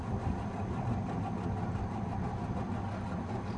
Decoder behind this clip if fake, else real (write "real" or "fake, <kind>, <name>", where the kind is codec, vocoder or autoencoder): real